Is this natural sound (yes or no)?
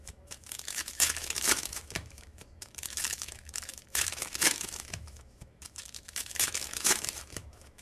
no